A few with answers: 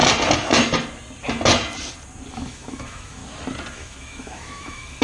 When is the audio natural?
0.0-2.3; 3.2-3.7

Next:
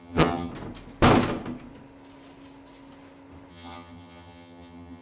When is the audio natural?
0.5-3.5

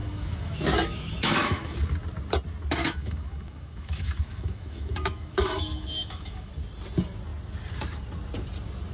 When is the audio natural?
1.8-2.8; 6.5-8.9

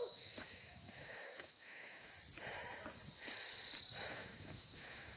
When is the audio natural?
2.1-4.1